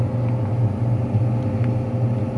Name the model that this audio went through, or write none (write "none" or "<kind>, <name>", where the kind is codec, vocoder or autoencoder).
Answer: none